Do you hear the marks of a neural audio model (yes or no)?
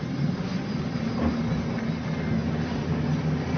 no